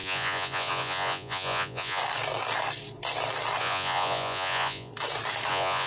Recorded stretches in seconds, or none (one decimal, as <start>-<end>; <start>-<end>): 2.0-3.6; 4.9-5.5